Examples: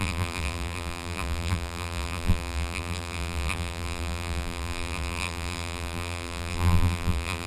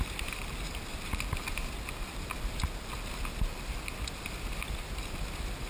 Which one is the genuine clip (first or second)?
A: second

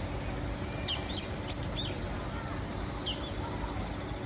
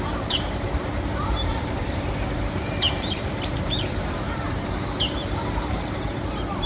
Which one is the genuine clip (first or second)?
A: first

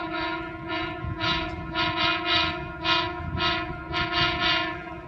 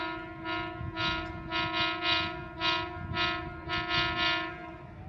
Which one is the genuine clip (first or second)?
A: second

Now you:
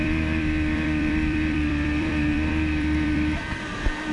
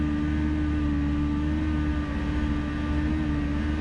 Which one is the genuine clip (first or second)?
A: second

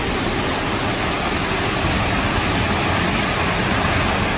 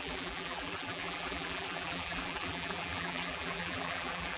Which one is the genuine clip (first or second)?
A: first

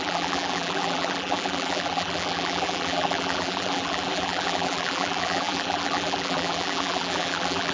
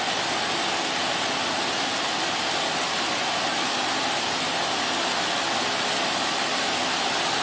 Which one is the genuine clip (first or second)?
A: second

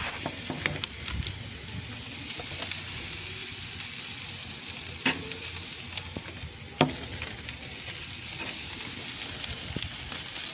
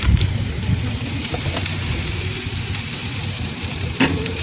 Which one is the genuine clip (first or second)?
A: first